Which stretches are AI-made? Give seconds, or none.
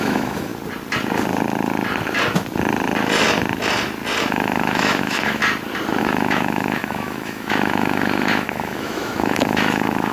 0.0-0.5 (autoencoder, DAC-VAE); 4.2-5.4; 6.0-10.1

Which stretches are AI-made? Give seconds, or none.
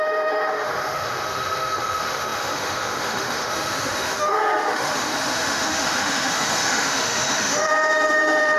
0.0-8.6 (autoencoder, DAC-VAE)